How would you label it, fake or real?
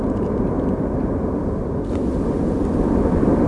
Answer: real